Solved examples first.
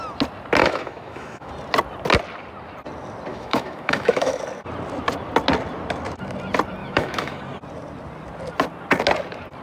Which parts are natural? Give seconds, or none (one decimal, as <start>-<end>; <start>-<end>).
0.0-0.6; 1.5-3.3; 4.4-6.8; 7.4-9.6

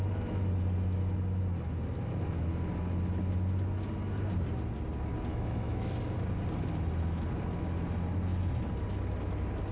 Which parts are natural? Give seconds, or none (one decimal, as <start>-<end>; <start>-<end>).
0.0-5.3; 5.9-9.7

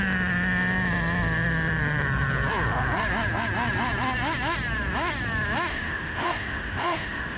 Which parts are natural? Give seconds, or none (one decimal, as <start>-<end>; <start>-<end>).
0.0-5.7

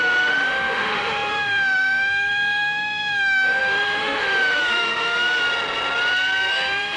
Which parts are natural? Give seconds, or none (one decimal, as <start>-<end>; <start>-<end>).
5.4-6.5

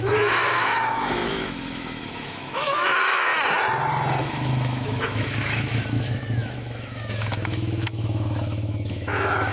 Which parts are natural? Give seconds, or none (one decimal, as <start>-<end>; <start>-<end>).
3.3-4.2

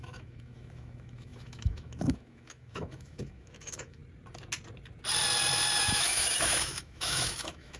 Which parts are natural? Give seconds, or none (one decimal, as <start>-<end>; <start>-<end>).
4.0-5.8

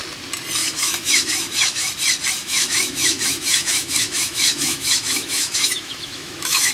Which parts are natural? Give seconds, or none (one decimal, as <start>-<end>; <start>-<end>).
0.0-0.6; 1.9-2.4